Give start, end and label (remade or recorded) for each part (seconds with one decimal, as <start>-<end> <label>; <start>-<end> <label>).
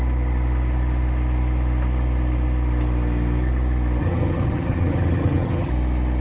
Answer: 0.0-4.0 recorded; 4.0-5.7 remade; 5.7-6.2 recorded